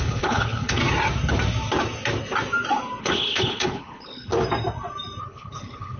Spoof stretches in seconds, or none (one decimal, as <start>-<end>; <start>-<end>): 0.0-0.8; 3.0-4.3; 5.2-6.0

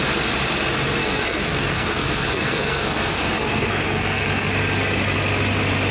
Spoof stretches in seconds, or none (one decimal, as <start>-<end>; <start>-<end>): 1.0-4.5

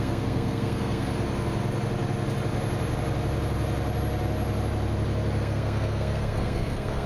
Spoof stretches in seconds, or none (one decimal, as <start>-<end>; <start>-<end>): 0.0-1.1; 5.4-7.1